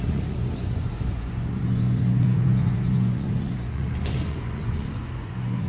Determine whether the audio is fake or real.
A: fake